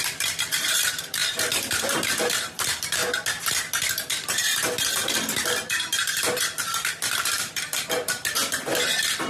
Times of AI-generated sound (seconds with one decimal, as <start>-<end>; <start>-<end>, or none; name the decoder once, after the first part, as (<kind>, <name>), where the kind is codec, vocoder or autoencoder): 0.0-3.0 (vocoder, BigVGAN v2); 4.9-9.3